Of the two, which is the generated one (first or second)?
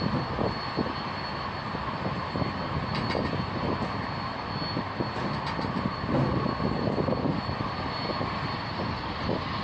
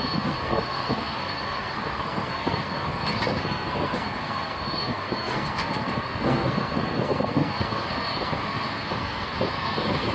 second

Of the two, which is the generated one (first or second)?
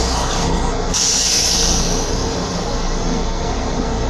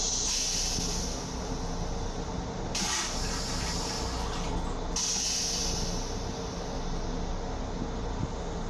first